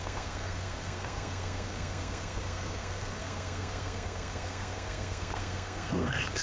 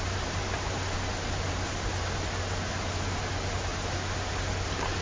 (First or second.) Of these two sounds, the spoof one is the first